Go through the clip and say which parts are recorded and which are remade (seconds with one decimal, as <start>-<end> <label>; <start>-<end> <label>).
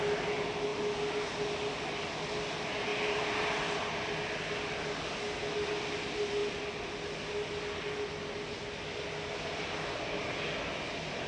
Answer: 0.0-2.9 recorded; 2.9-3.9 remade; 3.9-11.3 recorded